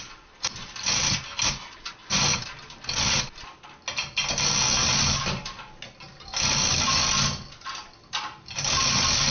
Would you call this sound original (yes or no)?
yes